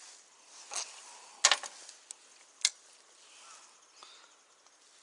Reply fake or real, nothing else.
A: real